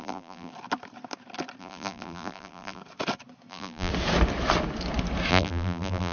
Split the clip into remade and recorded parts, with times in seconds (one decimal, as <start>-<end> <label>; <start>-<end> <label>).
0.0-0.5 remade; 0.5-1.6 recorded; 1.6-2.8 remade; 2.8-3.5 recorded; 3.5-3.9 remade; 3.9-5.3 recorded; 5.3-6.1 remade